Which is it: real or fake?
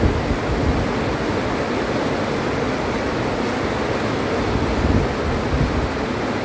real